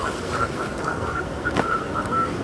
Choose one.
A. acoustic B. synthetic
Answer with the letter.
B